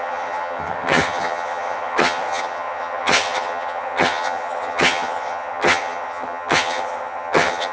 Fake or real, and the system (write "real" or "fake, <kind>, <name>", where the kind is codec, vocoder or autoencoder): fake, vocoder, HiFi-GAN